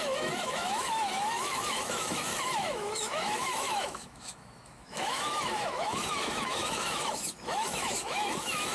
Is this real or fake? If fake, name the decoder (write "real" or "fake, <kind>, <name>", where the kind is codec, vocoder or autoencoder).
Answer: fake, autoencoder, DAC-VAE